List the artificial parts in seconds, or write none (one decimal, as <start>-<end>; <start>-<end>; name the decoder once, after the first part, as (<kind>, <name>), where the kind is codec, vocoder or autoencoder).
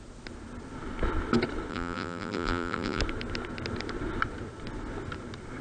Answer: 1.7-3.0 (vocoder, BigVGAN v2)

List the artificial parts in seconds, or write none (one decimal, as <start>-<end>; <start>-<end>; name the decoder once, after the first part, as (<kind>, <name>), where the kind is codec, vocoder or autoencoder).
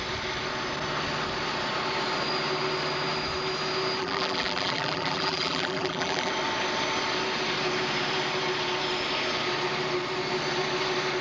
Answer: 4.0-6.3 (vocoder, BigVGAN v2)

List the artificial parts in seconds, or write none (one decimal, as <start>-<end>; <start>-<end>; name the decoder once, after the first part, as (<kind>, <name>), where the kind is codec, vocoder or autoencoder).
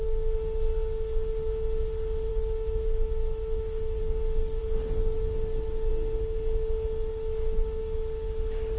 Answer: 2.3-4.0 (autoencoder, DAC-VAE); 4.6-5.9; 7.1-7.8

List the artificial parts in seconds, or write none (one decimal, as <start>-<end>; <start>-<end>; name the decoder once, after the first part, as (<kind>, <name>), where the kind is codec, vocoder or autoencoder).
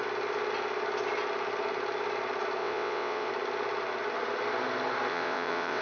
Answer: 2.6-3.3 (vocoder, WaveNeXt); 5.1-5.8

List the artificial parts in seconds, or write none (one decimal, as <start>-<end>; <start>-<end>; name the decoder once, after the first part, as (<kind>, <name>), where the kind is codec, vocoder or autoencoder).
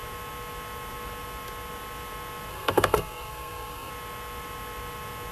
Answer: 2.5-3.9 (codec, SNAC)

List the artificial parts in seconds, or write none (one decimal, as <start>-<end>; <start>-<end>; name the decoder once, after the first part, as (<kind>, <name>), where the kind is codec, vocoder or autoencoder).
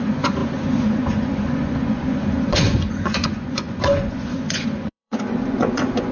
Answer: 0.0-6.1 (vocoder, Vocos)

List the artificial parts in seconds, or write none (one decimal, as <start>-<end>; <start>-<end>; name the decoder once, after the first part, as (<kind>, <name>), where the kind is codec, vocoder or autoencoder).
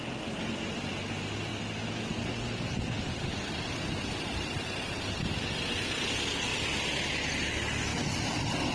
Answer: none